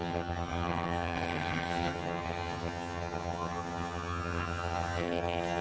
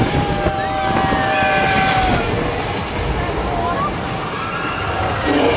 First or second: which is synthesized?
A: first